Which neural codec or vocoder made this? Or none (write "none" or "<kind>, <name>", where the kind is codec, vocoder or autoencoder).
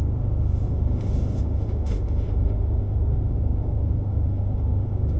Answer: autoencoder, DAC-VAE